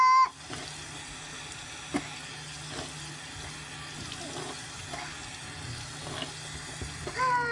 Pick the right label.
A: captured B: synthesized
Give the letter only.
A